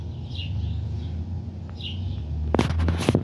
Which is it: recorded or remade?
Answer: recorded